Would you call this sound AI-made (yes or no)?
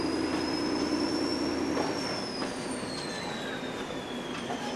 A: no